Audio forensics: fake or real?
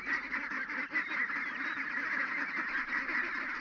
real